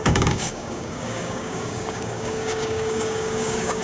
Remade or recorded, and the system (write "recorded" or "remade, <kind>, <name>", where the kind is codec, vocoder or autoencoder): remade, codec, DAC